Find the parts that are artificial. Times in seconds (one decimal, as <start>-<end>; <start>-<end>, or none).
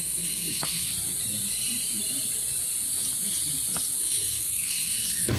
0.0-0.9; 4.0-5.4